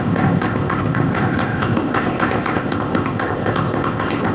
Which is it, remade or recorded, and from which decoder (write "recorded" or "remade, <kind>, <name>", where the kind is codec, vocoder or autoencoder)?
remade, codec, ZipCodec